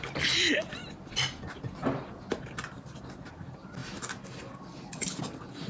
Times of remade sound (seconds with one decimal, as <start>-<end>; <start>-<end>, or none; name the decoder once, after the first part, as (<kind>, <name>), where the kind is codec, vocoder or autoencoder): none